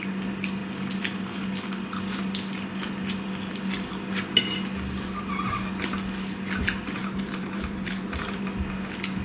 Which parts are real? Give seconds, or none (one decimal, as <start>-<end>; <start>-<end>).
0.0-7.0; 8.4-9.2